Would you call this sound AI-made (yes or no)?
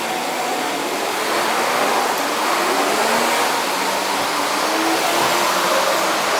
no